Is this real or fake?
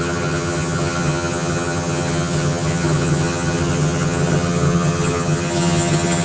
fake